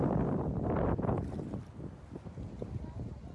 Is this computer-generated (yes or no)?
no